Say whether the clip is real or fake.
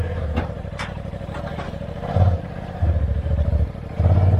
fake